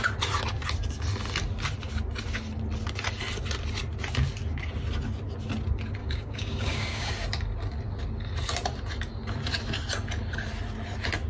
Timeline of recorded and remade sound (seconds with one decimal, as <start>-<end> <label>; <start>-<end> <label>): 0.0-6.0 recorded; 6.0-7.1 remade; 7.1-11.3 recorded